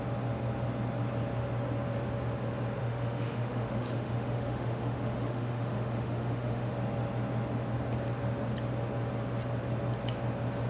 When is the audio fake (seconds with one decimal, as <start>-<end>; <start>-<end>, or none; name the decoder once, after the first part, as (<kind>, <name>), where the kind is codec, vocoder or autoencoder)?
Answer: 2.8-6.7 (autoencoder, DAC-VAE)